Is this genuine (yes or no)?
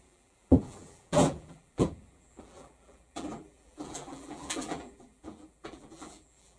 no